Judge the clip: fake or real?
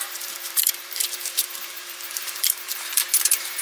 fake